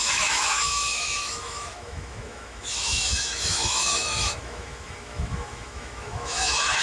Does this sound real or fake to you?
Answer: fake